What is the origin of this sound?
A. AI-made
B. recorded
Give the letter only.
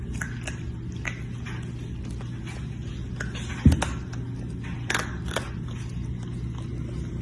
B